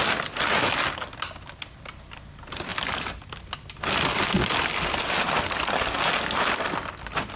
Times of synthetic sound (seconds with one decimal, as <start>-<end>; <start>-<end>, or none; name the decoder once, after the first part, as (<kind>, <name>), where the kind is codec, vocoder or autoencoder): none